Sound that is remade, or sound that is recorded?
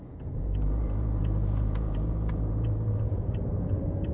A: remade